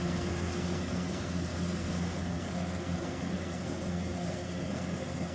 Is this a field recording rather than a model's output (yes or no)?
no